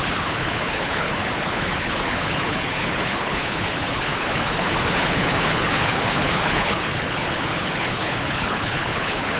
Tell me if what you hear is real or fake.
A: fake